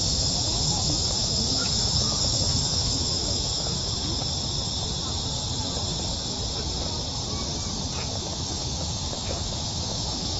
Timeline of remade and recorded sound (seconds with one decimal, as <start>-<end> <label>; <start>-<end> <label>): 0.0-3.8 remade; 3.8-8.2 recorded; 8.2-10.4 remade